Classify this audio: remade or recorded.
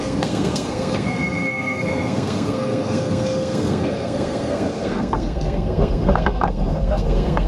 remade